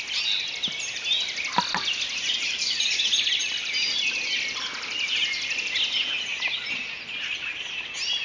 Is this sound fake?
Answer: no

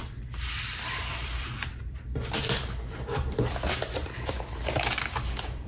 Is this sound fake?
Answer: yes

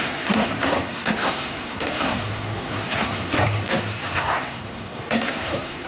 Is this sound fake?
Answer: yes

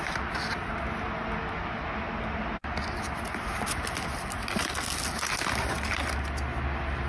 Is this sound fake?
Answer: no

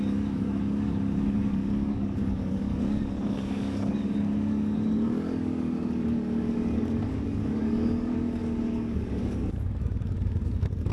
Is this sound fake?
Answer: yes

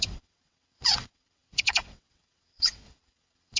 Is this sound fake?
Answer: yes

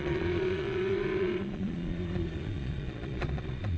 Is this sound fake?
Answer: yes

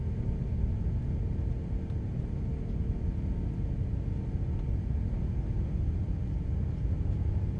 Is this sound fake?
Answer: no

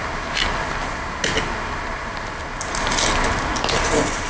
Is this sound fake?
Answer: no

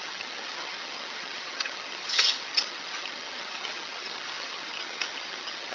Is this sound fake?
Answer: yes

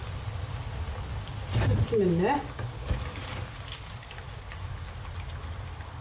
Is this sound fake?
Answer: no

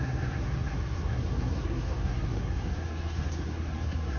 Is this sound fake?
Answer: yes